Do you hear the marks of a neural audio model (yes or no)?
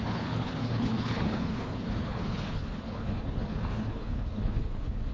yes